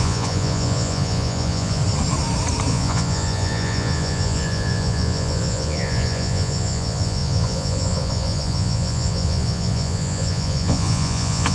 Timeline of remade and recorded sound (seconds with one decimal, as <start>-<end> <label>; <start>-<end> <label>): 0.0-1.8 remade; 1.8-2.7 recorded; 2.7-11.5 remade